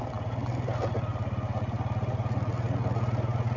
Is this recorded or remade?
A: recorded